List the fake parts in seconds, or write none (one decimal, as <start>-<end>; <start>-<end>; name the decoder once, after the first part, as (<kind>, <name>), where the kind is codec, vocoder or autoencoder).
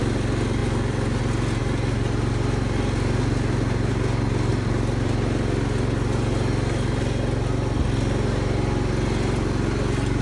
0.6-1.2 (vocoder, BigVGAN v2); 4.5-5.1